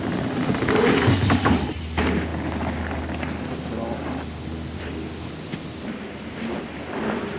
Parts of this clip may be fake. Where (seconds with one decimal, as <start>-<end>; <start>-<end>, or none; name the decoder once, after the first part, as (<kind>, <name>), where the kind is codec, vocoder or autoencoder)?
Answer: none